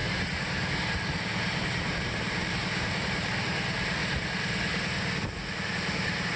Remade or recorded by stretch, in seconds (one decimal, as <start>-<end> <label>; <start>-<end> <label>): 0.0-2.0 recorded; 2.0-4.0 remade; 4.0-5.7 recorded; 5.7-6.4 remade